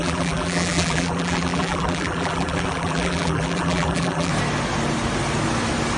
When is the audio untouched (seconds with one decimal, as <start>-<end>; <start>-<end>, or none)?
4.3-6.0